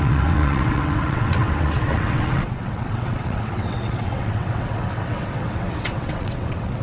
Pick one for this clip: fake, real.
fake